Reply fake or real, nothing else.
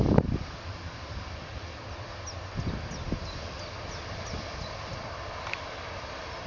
real